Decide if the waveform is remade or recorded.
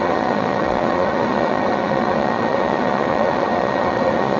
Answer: remade